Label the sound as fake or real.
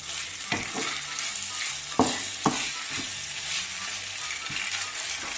real